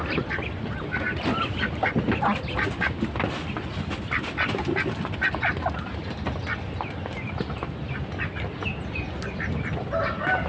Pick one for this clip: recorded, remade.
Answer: recorded